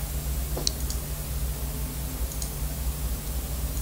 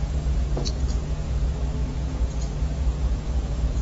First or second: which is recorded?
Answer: first